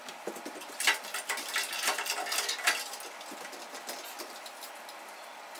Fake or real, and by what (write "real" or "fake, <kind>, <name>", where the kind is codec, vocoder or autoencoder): real